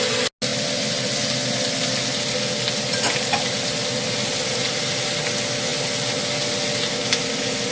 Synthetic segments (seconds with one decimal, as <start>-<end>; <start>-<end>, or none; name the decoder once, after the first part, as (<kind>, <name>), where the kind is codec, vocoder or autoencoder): none